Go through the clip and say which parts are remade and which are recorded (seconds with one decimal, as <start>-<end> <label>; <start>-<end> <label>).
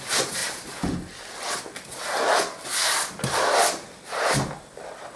0.0-5.2 recorded